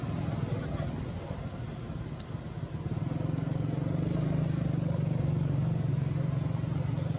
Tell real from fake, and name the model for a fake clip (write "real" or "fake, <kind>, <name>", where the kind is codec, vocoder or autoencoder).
real